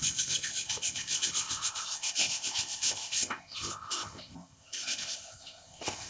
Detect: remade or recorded remade